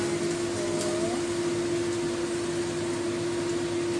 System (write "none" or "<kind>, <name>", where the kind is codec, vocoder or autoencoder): none